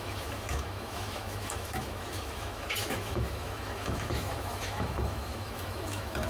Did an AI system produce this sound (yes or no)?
yes